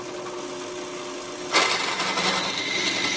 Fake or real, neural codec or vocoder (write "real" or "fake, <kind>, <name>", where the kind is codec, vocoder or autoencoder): real